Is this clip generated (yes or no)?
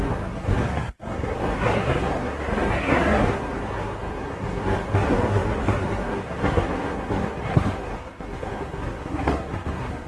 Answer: yes